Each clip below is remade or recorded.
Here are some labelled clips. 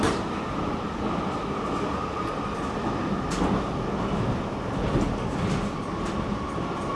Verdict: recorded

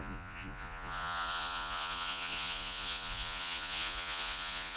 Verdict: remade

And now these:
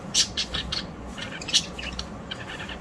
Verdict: remade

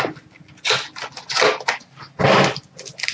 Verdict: recorded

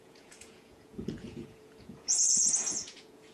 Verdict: remade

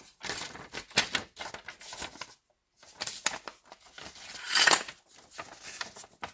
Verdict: recorded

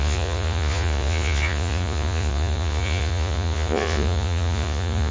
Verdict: remade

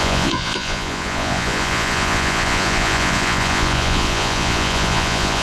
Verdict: remade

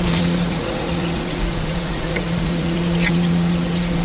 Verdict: remade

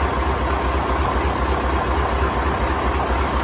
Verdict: recorded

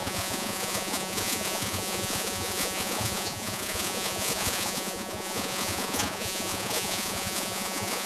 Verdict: remade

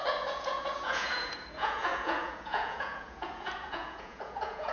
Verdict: remade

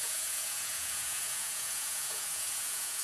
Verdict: remade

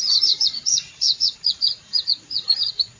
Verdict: remade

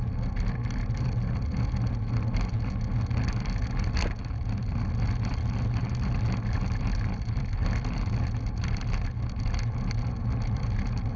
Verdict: recorded